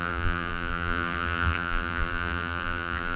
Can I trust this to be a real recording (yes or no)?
no